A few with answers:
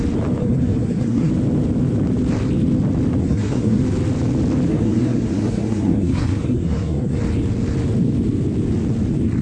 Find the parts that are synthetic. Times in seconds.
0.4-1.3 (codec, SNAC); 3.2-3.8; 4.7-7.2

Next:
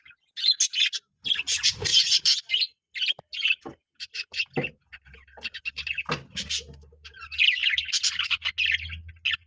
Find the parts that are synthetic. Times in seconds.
none

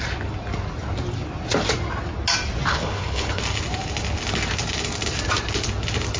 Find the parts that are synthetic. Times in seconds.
2.7-3.4 (codec, HILCodec)

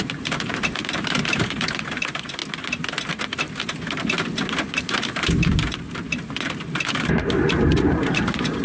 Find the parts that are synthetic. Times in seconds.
0.0-2.4 (vocoder, BigVGAN v2); 4.8-5.6; 8.0-8.6

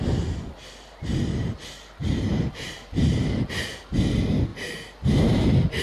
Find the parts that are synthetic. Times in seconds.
2.0-3.5 (vocoder, BigVGAN v2)

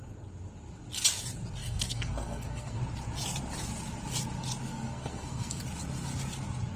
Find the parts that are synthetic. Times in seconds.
1.6-2.8 (codec, SNAC); 4.7-5.6

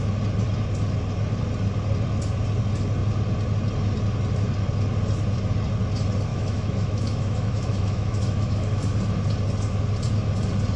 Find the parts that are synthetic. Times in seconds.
6.3-8.8 (autoencoder, DAC-VAE)